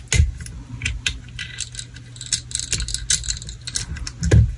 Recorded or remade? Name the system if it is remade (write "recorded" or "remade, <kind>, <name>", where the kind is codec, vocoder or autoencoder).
recorded